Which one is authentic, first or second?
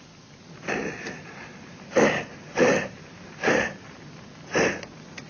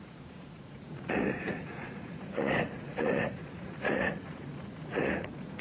first